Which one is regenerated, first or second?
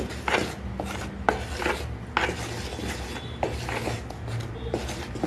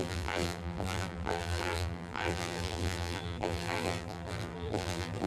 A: second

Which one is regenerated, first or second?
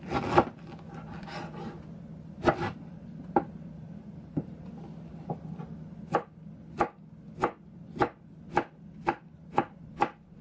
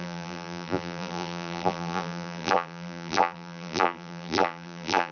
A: second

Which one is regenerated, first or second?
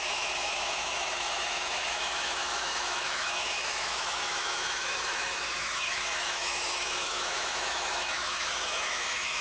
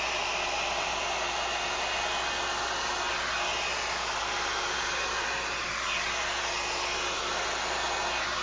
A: first